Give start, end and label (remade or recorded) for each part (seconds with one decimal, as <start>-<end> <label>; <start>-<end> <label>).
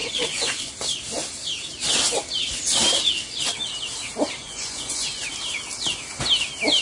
0.0-0.7 remade; 0.7-4.4 recorded; 4.4-5.3 remade; 5.3-6.8 recorded